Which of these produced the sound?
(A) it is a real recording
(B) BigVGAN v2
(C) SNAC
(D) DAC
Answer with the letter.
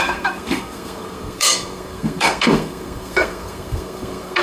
C